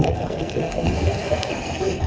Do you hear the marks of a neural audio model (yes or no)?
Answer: yes